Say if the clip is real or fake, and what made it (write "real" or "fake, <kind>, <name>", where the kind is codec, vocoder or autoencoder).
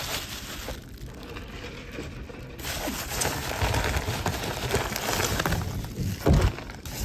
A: real